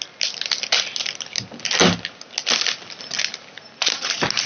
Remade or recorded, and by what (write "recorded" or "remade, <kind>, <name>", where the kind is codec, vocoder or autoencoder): recorded